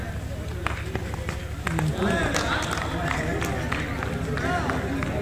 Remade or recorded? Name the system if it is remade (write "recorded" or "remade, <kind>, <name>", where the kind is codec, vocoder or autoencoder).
recorded